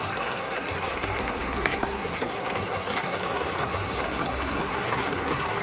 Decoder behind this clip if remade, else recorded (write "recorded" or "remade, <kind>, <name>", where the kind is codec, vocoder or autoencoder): remade, codec, SNAC